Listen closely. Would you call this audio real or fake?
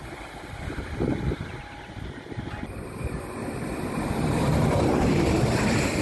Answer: real